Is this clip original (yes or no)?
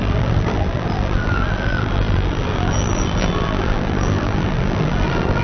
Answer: no